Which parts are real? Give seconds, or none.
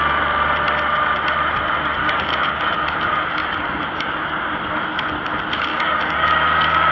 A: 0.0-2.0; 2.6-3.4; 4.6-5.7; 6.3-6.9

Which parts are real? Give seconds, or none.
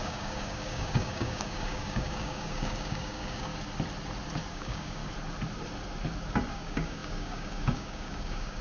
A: 3.5-4.5; 5.0-6.5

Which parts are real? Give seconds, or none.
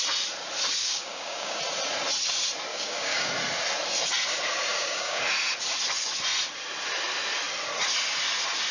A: 0.0-0.8; 1.6-2.7; 3.3-4.7; 5.2-8.7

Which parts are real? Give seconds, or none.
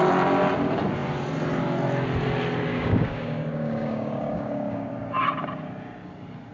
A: 0.0-2.7; 4.9-6.5